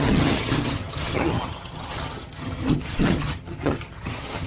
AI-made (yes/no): yes